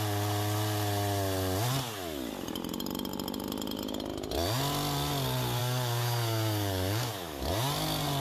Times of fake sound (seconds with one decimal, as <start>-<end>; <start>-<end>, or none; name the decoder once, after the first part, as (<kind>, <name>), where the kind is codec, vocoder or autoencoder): 5.6-7.5 (codec, DAC)